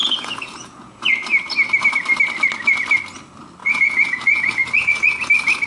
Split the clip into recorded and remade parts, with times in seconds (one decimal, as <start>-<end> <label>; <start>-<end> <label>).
0.0-1.1 remade; 1.1-3.6 recorded; 3.6-5.2 remade; 5.2-5.7 recorded